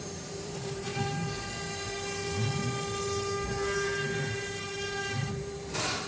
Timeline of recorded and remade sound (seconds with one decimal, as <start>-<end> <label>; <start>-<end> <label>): 0.0-0.9 remade; 0.9-4.6 recorded; 4.6-6.1 remade